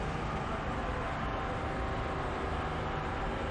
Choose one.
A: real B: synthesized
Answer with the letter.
A